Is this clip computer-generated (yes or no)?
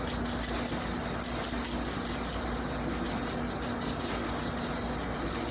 no